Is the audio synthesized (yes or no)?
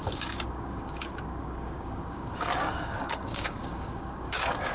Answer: yes